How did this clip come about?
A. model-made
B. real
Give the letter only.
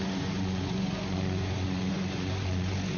A